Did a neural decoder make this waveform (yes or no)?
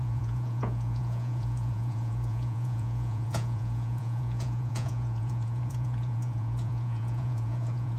yes